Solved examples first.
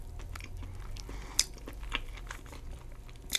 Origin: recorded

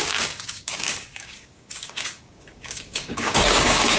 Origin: remade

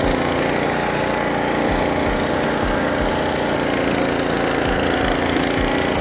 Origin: recorded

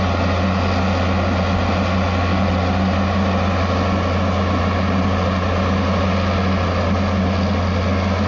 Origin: recorded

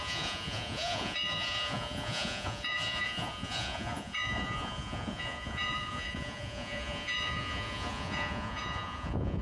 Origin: remade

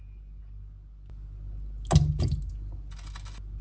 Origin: recorded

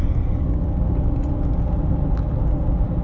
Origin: recorded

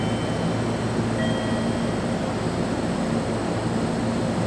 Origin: recorded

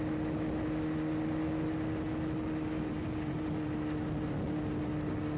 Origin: recorded